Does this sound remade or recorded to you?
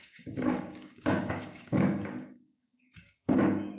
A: remade